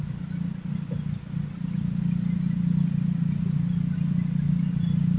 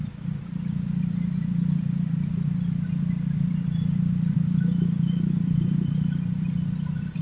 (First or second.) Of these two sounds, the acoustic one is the first